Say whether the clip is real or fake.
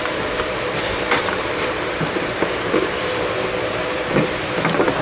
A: fake